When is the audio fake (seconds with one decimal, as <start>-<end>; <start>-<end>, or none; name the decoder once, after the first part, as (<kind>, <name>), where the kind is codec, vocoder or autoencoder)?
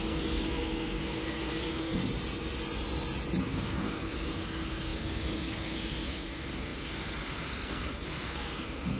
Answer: 0.0-2.0 (codec, SNAC); 3.4-9.0